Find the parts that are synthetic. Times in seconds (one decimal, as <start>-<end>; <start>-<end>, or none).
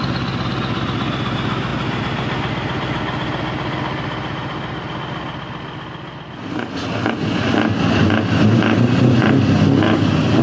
none